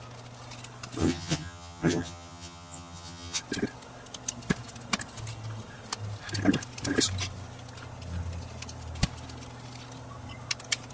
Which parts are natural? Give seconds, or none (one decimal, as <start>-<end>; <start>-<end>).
0.0-1.0; 3.4-10.9